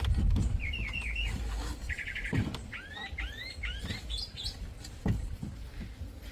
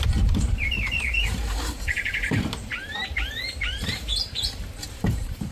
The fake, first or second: second